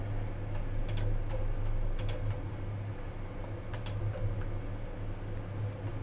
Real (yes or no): yes